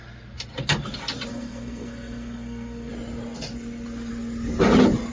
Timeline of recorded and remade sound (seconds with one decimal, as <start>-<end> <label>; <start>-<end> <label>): 0.0-1.3 recorded; 1.3-2.9 remade; 2.9-5.1 recorded